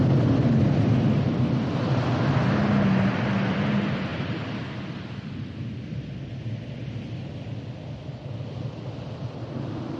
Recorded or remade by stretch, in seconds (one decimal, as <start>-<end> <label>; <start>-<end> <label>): 0.0-10.0 recorded